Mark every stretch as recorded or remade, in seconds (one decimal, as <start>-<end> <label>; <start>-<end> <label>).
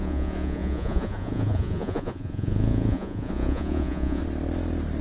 0.0-4.2 remade; 4.2-5.0 recorded